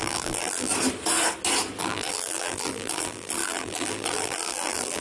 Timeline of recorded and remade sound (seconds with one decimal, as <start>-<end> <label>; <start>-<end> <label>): 0.0-0.7 remade; 0.7-1.8 recorded; 1.8-5.0 remade